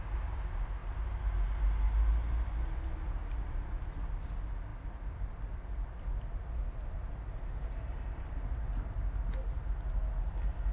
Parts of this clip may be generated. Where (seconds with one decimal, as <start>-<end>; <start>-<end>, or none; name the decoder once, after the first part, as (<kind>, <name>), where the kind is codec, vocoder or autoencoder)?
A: none